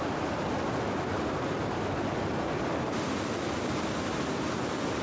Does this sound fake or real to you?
real